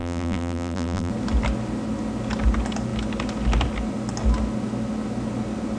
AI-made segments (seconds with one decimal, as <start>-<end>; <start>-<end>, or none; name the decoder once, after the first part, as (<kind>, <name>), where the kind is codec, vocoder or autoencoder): 0.0-1.1 (vocoder, BigVGAN v2)